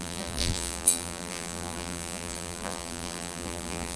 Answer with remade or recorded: remade